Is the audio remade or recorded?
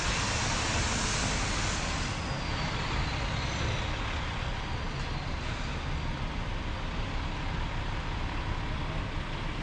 recorded